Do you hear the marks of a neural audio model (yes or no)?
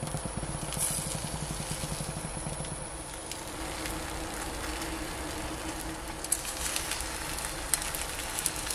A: no